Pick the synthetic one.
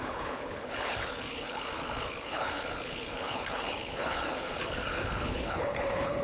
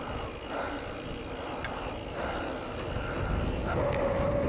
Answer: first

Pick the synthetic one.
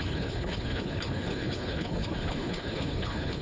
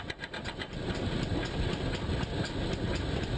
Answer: first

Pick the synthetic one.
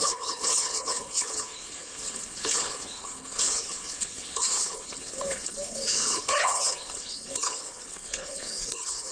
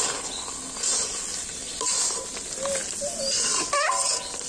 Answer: first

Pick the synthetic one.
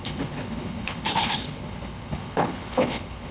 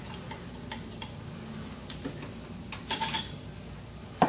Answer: first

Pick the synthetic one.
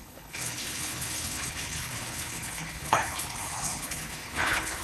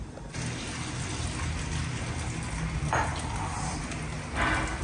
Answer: first